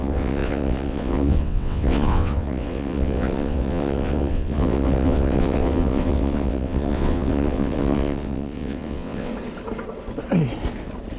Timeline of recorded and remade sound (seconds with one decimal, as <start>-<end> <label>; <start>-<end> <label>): 0.0-9.3 remade; 9.3-11.2 recorded